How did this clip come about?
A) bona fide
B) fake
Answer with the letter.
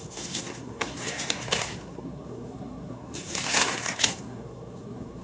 B